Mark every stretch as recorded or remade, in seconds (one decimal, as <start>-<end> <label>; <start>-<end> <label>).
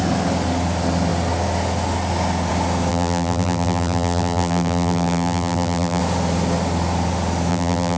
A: 0.0-2.9 recorded; 2.9-6.0 remade; 6.0-7.5 recorded; 7.5-8.0 remade